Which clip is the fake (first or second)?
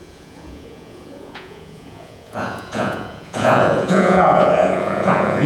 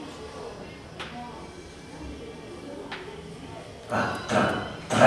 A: first